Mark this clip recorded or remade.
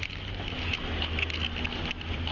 recorded